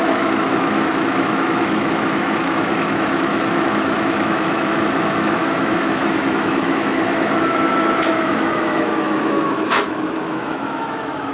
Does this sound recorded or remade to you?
remade